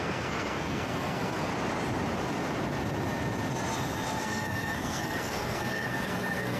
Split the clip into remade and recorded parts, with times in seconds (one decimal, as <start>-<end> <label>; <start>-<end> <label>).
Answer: 0.0-1.5 remade; 1.5-4.2 recorded; 4.2-6.6 remade